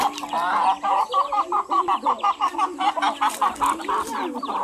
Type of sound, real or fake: real